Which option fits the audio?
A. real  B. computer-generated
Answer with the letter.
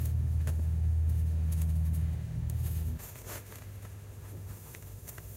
B